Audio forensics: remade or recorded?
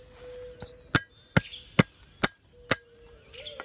recorded